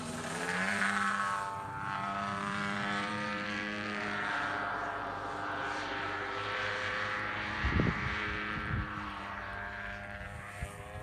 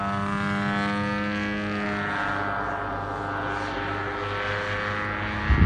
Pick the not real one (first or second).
first